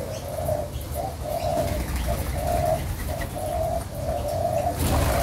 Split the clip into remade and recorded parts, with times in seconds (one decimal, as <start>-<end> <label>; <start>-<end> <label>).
0.0-5.2 recorded